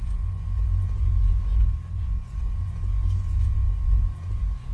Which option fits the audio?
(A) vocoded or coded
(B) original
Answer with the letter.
A